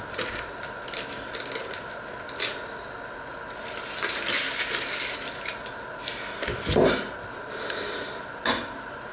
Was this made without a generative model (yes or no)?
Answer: yes